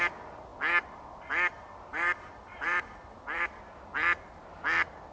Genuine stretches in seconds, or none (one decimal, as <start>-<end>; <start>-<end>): 0.0-1.9; 3.6-5.1